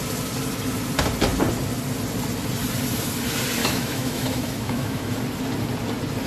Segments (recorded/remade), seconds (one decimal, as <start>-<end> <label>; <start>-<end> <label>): 0.0-3.6 recorded; 3.6-5.1 remade; 5.1-6.3 recorded